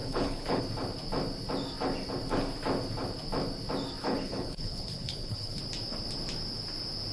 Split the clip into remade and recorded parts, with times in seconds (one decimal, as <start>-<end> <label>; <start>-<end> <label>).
0.0-0.6 remade; 0.6-4.0 recorded; 4.0-5.6 remade; 5.6-7.1 recorded